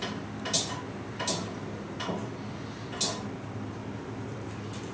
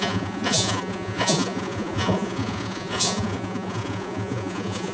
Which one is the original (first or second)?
first